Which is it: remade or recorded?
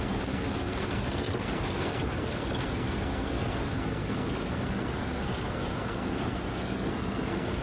remade